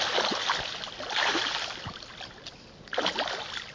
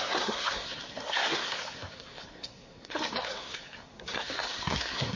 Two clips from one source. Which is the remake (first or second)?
second